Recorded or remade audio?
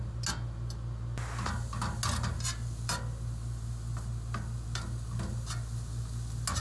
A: recorded